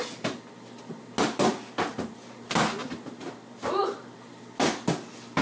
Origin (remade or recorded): recorded